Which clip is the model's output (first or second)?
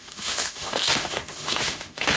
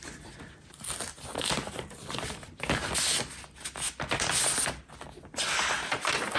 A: first